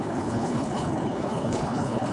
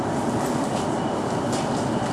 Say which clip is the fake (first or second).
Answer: first